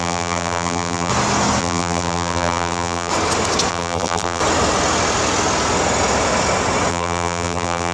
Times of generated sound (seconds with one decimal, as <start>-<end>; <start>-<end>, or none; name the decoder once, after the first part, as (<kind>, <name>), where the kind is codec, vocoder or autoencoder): 0.0-1.1 (vocoder, BigVGAN v2); 1.6-3.1; 3.7-4.4; 6.9-7.9